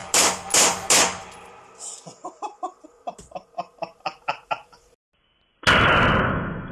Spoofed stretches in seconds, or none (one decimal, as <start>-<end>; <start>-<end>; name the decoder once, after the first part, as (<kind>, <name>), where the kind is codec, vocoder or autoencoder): 0.0-1.2 (vocoder, BigVGAN v2); 2.2-5.0